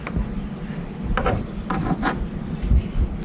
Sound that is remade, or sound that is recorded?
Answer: recorded